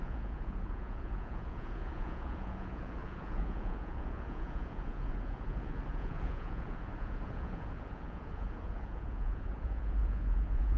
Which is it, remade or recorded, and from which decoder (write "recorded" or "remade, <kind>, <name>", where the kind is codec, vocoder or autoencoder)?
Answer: remade, vocoder, Vocos